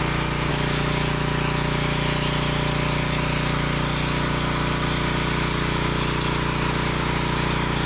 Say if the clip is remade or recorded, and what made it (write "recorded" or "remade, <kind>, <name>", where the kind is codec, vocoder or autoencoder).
recorded